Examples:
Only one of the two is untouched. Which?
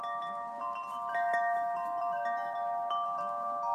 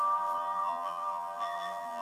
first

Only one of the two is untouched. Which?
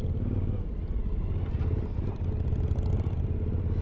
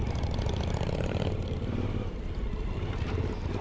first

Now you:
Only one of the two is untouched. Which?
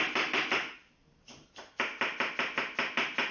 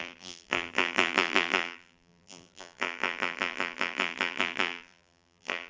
first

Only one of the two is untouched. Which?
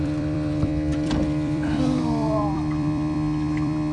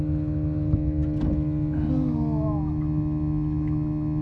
second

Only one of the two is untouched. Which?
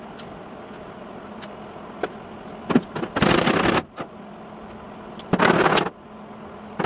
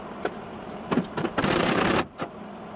first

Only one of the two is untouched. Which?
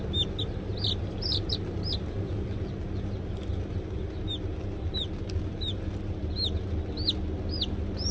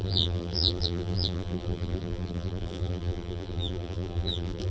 first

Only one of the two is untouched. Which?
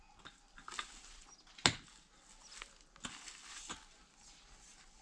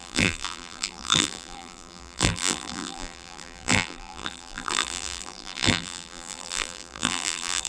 first